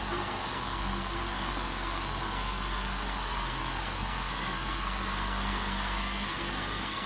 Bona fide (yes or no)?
no